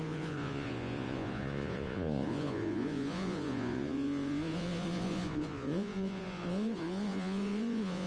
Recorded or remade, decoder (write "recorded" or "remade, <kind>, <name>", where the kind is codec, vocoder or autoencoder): remade, vocoder, Vocos